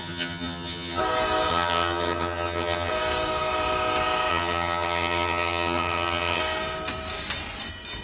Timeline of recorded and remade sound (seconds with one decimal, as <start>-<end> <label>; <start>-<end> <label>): 0.0-1.0 remade; 1.0-1.5 recorded; 1.5-2.9 remade; 2.9-4.3 recorded; 4.3-6.4 remade; 6.4-8.0 recorded